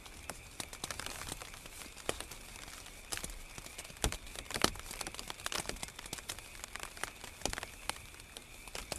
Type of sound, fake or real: real